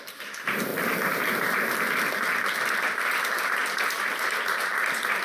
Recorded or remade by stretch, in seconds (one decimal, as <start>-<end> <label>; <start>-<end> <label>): 0.0-0.7 remade; 0.7-3.8 recorded; 3.8-5.2 remade